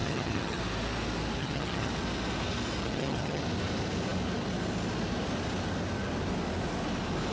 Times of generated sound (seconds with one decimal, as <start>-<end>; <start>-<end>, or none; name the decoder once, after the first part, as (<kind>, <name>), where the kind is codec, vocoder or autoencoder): 0.0-0.6 (vocoder, HiFi-GAN); 1.4-1.9; 2.8-3.4